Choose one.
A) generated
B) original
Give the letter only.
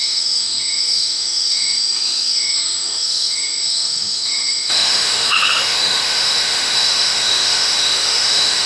A